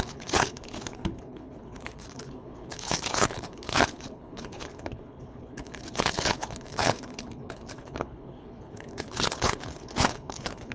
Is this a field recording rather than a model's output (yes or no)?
no